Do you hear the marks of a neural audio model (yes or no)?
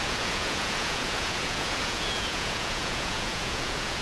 yes